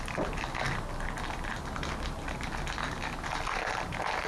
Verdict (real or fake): real